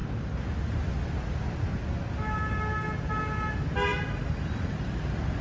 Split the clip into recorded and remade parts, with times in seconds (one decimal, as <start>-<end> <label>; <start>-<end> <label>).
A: 0.0-5.4 recorded